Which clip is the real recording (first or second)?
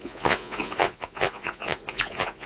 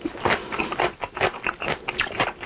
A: second